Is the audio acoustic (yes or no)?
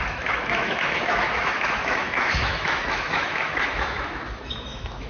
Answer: no